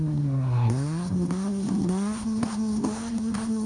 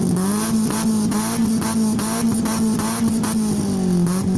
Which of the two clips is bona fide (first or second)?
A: second